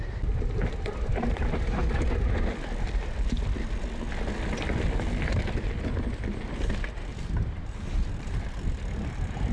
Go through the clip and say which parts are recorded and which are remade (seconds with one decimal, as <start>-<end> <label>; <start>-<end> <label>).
0.0-7.1 recorded; 7.1-8.4 remade; 8.4-9.5 recorded